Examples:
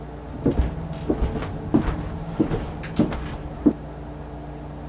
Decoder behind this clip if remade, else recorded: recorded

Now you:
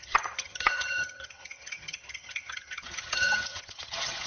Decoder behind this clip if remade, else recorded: remade, vocoder, HiFi-GAN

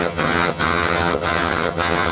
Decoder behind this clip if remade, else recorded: remade, vocoder, HiFi-GAN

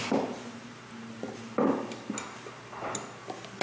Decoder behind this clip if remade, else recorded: recorded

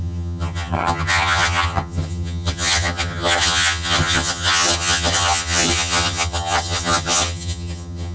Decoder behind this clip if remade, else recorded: remade, vocoder, HiFi-GAN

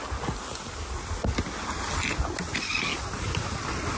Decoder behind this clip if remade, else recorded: recorded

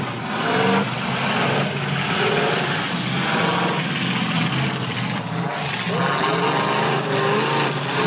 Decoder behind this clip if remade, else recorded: recorded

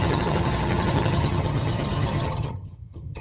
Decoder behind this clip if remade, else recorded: remade, vocoder, HiFi-GAN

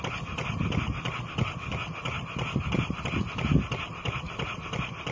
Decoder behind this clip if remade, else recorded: recorded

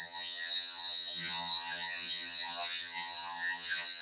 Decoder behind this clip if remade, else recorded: remade, vocoder, HiFi-GAN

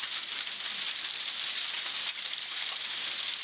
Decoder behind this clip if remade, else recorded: recorded